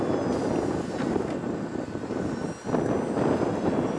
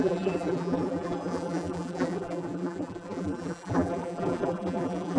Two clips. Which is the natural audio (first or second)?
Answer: first